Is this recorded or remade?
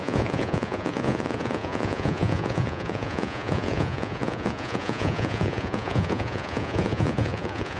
remade